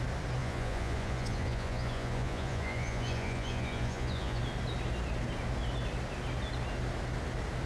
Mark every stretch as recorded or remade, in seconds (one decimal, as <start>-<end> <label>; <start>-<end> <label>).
0.0-0.4 recorded; 0.4-4.4 remade; 4.4-7.7 recorded